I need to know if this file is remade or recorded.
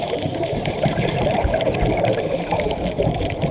remade